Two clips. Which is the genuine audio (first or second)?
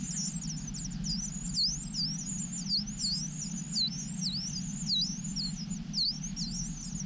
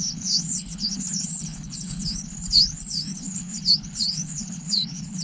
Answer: first